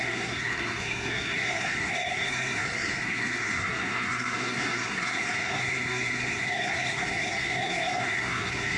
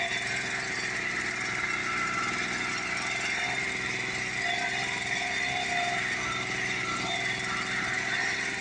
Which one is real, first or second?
second